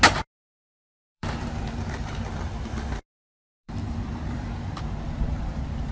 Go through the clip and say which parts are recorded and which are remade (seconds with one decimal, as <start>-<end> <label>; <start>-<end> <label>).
0.0-0.6 recorded; 0.6-2.2 remade; 2.2-3.5 recorded; 3.5-4.8 remade; 4.8-5.9 recorded